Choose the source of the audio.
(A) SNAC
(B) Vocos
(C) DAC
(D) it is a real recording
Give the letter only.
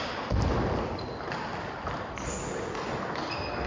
D